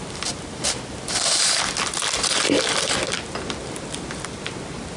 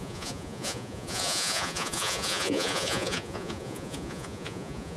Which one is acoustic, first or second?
first